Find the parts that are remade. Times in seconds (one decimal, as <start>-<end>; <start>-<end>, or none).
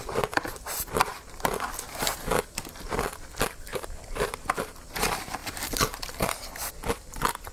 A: 3.7-4.6; 5.4-6.7